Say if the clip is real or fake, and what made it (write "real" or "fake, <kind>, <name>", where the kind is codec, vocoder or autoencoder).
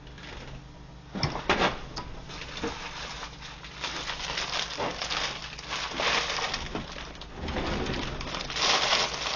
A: real